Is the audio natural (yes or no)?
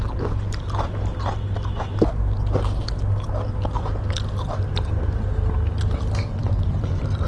yes